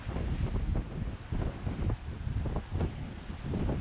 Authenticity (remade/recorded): recorded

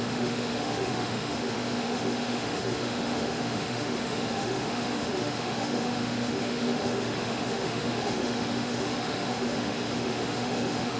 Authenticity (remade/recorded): remade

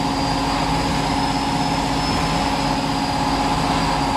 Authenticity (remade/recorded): recorded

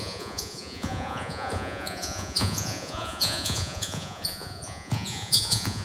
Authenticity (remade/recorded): remade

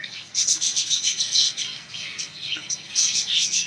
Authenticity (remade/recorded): remade